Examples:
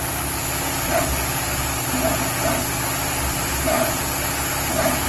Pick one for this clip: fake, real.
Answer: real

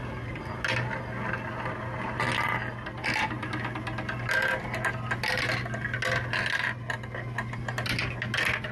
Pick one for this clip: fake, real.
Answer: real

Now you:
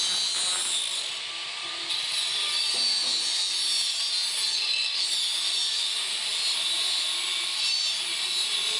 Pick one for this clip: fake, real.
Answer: real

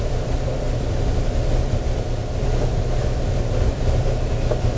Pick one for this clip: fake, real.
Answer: fake